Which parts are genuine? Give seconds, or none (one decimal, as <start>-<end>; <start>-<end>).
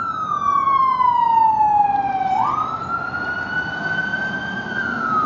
0.0-5.3